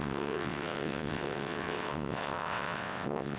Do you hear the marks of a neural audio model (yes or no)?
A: yes